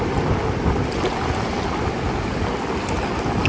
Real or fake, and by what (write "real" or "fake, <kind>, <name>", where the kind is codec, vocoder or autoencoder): real